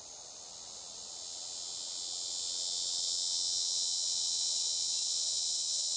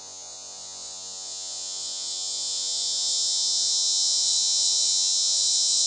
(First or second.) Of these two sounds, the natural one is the first